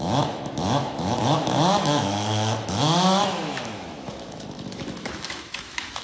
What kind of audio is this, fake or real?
fake